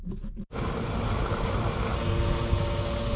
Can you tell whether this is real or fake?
real